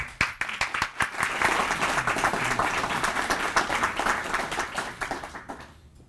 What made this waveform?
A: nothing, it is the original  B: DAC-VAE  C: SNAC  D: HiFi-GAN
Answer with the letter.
A